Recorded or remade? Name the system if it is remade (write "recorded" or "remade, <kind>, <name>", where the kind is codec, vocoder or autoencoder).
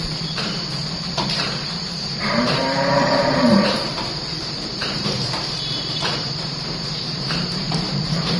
remade, vocoder, BigVGAN v2